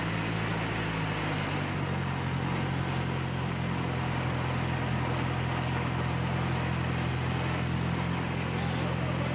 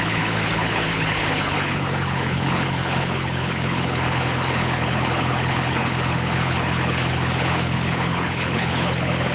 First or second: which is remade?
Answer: second